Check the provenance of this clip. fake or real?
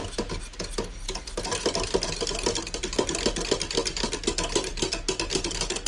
real